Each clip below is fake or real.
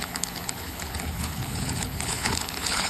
fake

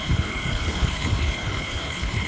fake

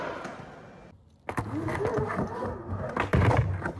real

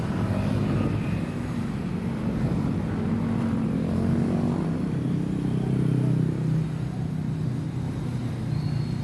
real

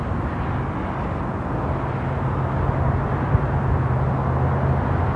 real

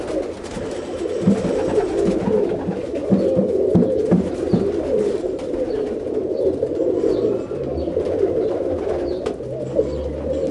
real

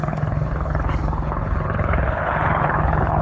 fake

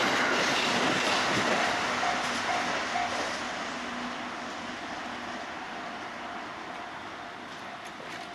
real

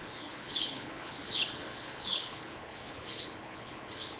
fake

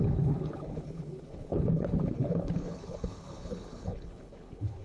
fake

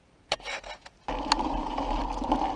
real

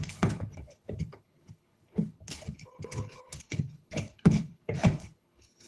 fake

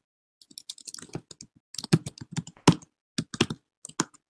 real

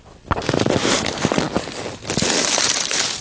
real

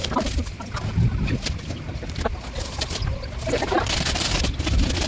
real